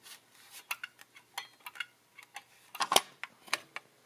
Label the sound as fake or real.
real